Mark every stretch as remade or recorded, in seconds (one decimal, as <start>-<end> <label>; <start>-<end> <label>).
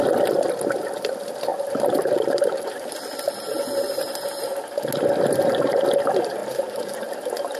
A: 0.0-1.5 recorded; 1.5-2.9 remade; 2.9-6.4 recorded; 6.4-7.1 remade; 7.1-7.6 recorded